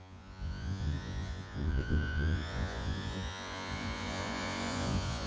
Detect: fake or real fake